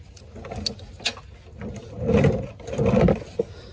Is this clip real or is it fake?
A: real